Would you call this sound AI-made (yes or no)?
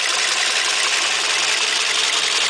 no